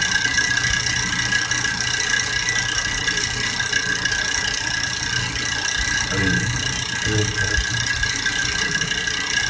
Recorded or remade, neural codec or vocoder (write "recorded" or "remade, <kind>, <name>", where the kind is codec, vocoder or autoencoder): recorded